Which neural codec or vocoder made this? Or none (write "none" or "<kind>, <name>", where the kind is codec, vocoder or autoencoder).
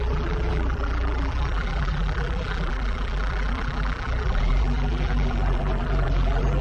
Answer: vocoder, BigVGAN v2